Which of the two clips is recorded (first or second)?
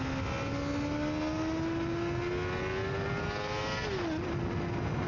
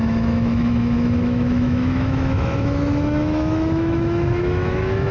first